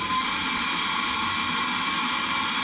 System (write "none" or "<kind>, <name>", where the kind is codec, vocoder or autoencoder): none